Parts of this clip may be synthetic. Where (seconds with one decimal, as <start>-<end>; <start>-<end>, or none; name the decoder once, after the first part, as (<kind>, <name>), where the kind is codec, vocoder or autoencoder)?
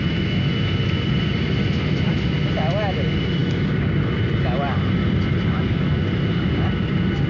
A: none